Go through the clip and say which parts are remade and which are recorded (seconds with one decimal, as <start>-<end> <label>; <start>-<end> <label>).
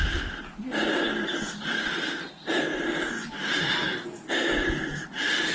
0.0-5.5 recorded